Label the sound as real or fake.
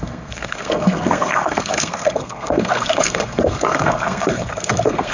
fake